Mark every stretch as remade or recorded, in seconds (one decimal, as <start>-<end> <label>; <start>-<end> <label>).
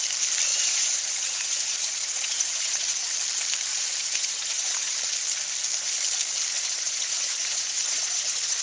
0.0-0.5 recorded; 0.5-3.1 remade; 3.1-3.7 recorded; 3.7-4.9 remade; 4.9-6.5 recorded; 6.5-8.6 remade